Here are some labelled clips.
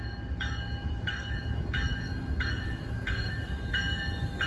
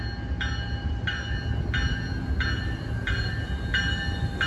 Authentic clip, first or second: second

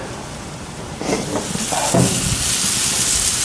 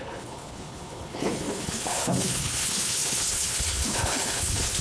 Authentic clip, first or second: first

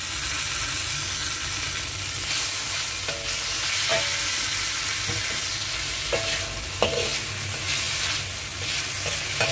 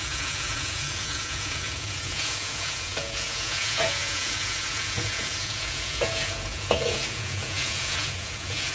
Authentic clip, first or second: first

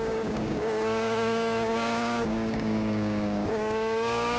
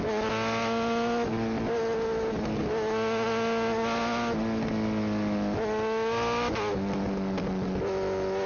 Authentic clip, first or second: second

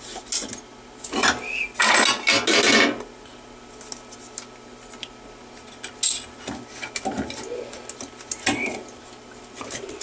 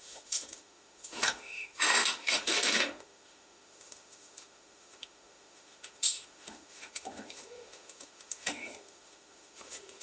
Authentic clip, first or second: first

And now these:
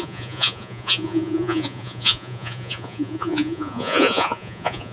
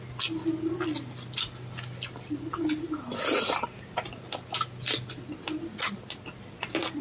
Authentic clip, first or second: second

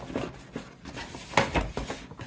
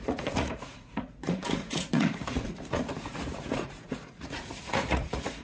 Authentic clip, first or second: first